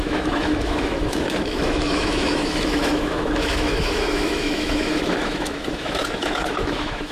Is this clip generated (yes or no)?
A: yes